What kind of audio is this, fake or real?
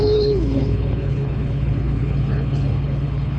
fake